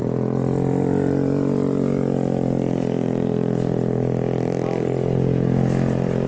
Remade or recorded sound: recorded